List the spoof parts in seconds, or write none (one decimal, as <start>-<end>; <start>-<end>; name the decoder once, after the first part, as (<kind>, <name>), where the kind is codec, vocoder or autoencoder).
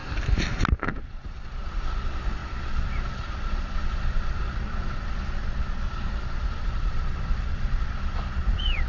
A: 0.9-8.9 (vocoder, Vocos)